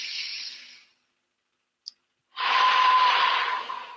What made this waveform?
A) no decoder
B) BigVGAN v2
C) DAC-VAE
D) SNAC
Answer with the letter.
A